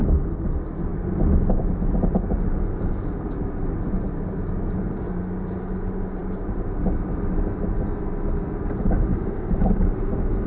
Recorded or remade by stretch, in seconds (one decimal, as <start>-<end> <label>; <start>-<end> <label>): 0.0-6.2 recorded; 6.2-6.8 remade; 6.8-9.1 recorded; 9.1-10.5 remade